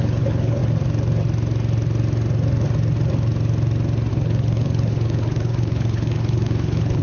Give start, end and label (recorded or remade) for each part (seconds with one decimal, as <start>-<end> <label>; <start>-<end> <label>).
0.0-0.6 remade; 0.6-4.1 recorded; 4.1-7.0 remade